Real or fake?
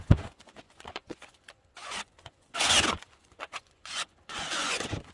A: fake